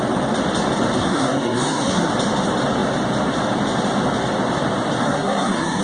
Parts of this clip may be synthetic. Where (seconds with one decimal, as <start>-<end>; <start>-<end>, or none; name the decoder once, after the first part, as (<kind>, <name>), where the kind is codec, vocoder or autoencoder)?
1.0-2.1 (codec, SNAC); 5.0-5.8